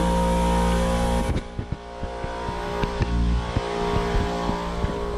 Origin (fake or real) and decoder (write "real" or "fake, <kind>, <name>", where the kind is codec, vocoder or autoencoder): real